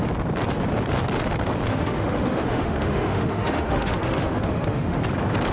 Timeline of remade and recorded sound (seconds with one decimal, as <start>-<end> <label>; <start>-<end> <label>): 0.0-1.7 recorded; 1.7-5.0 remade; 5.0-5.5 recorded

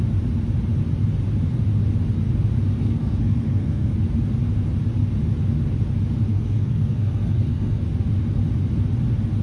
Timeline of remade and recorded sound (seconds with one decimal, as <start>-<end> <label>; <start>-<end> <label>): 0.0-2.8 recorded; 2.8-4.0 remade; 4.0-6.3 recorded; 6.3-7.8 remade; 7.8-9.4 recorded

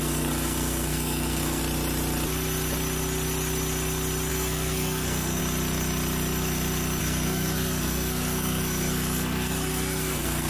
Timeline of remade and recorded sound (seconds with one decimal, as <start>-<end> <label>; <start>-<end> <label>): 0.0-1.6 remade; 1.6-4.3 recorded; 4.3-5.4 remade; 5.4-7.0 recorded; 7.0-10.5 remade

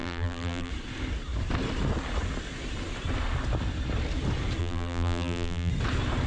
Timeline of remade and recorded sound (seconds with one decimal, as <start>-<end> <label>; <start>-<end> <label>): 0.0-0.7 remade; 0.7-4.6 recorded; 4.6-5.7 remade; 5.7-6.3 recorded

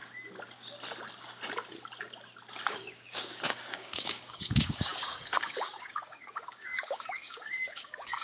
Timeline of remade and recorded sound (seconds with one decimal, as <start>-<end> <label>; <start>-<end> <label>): 0.0-2.7 recorded; 2.7-8.2 remade

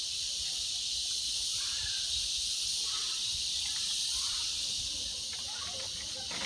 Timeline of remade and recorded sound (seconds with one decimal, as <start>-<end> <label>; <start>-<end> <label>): 0.0-6.5 recorded

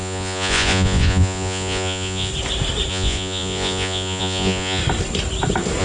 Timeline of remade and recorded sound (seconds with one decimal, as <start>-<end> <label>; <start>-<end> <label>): 0.0-2.3 remade; 2.3-2.9 recorded; 2.9-4.8 remade; 4.8-5.8 recorded